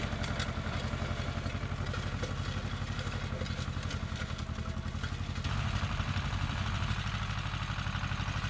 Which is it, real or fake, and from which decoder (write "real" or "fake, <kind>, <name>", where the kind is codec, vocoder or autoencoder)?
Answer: real